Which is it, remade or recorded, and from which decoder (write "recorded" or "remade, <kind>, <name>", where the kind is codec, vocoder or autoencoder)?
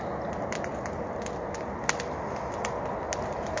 recorded